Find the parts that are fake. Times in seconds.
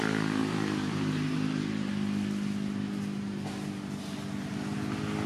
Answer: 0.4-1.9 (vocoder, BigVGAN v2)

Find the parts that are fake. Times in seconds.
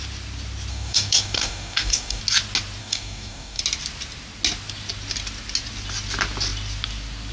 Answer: 0.7-2.2 (codec, DAC); 2.8-3.6